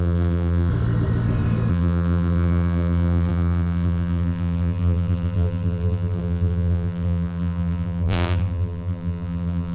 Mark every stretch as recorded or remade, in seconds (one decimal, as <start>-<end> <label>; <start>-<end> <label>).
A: 0.0-0.7 remade; 0.7-1.7 recorded; 1.7-9.7 remade